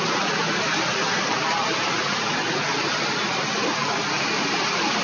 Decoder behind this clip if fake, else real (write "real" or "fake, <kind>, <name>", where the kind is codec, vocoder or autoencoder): fake, vocoder, BigVGAN v2